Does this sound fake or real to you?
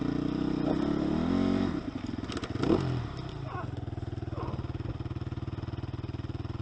real